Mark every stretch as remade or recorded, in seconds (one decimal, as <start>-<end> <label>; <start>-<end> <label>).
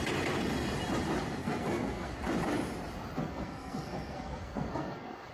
0.0-1.4 recorded; 1.4-2.1 remade; 2.1-3.2 recorded; 3.2-5.3 remade